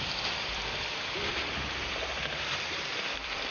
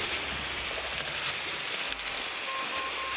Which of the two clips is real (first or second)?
second